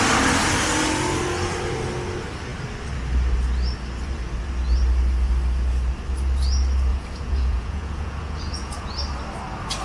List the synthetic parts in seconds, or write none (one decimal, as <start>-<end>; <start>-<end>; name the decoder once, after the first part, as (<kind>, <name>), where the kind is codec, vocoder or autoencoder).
6.9-8.9 (vocoder, Vocos)